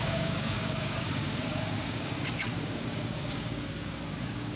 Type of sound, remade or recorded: remade